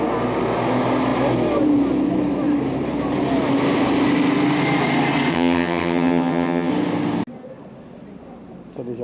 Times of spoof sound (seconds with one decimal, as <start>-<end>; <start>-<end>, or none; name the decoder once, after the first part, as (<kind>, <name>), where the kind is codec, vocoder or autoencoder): 5.3-6.7 (vocoder, HiFi-GAN)